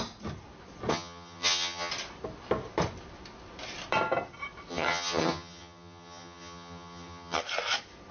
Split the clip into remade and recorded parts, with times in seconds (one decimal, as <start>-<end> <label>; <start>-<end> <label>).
0.0-0.9 recorded; 0.9-1.9 remade; 1.9-4.7 recorded; 4.7-7.4 remade; 7.4-8.1 recorded